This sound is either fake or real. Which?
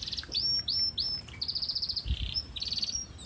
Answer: real